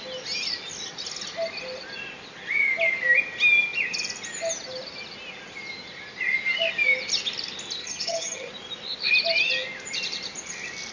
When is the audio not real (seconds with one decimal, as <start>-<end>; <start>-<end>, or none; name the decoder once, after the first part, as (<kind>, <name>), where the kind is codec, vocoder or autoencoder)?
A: 7.8-8.5 (vocoder, HiFi-GAN)